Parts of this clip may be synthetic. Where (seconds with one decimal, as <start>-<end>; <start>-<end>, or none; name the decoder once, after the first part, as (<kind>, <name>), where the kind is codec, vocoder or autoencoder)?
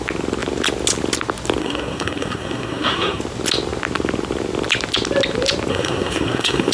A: 1.6-3.2 (codec, SNAC); 5.7-6.7